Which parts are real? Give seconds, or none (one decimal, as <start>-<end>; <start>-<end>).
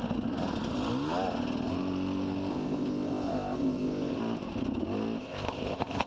0.0-2.5; 4.2-5.2